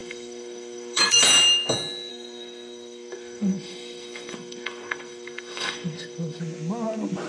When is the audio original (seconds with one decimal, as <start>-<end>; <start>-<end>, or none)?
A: 1.2-2.1; 6.4-7.3